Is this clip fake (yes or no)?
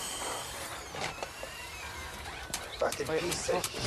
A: yes